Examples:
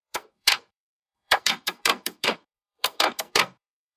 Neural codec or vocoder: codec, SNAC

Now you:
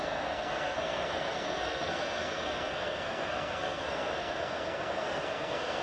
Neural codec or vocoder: codec, SNAC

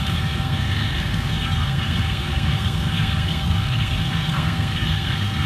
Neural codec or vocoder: codec, SNAC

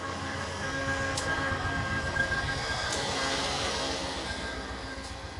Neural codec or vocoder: codec, SNAC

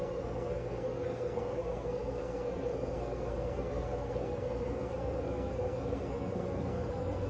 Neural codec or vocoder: codec, SNAC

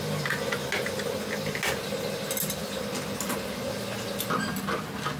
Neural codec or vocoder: none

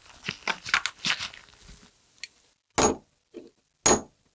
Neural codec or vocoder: none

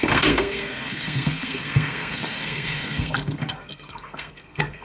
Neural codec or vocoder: codec, SNAC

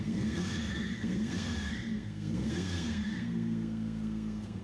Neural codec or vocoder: codec, SNAC